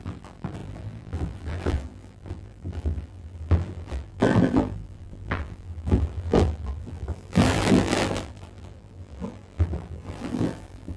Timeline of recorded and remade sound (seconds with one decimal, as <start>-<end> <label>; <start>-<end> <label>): 0.0-11.0 remade